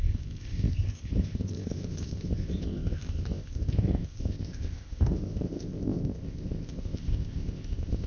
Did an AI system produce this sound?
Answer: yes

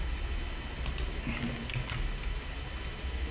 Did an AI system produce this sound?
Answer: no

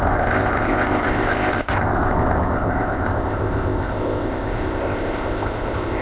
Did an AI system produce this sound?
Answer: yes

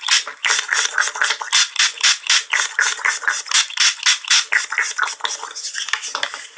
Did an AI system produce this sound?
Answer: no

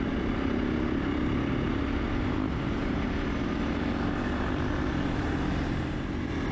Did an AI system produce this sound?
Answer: no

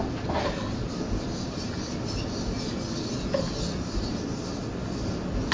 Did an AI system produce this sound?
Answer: no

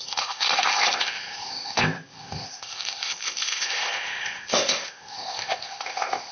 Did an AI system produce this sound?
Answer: yes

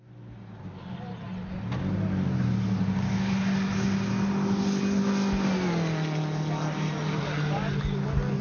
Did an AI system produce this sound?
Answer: no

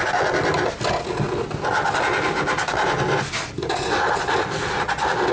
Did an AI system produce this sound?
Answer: no